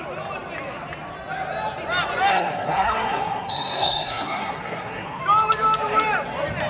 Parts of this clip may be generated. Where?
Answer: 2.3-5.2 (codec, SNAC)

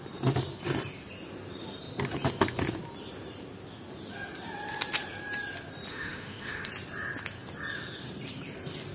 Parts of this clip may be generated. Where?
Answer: 5.9-6.7 (autoencoder, DAC-VAE)

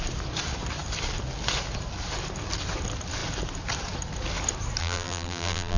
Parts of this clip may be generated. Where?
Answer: 4.8-5.8 (vocoder, BigVGAN v2)

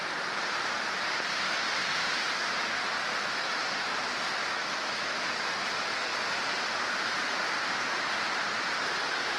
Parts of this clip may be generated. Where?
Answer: 4.4-5.5 (autoencoder, DAC-VAE)

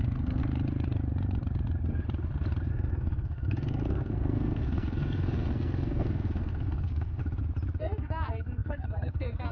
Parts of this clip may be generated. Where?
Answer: 0.0-0.4 (codec, SNAC); 2.7-7.2; 7.8-9.5

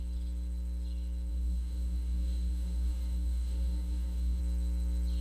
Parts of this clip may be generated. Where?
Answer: 1.3-4.4 (codec, DAC)

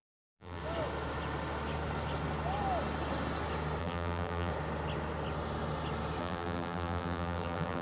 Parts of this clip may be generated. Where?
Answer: 0.0-0.6 (vocoder, BigVGAN v2); 3.8-4.5; 6.2-7.8

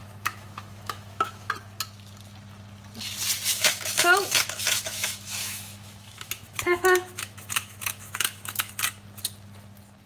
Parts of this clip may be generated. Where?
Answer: 0.0-1.5 (autoencoder, DAC-VAE); 3.5-8.7